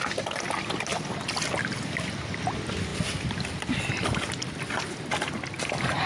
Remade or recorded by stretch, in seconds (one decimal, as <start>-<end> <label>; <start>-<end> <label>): 0.0-6.1 recorded